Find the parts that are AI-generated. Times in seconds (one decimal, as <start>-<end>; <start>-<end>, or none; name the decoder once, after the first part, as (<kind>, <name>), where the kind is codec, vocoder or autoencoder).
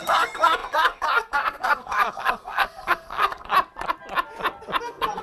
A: 0.0-3.5 (codec, SNAC); 4.8-5.2